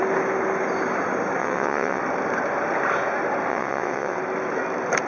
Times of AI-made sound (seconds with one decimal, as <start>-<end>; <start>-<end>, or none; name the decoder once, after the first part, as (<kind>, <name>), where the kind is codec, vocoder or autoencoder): 1.4-2.0 (vocoder, WaveNeXt); 3.5-4.2